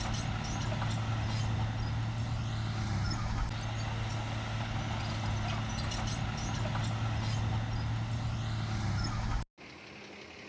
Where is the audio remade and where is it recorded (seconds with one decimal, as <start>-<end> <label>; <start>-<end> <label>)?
0.0-10.5 recorded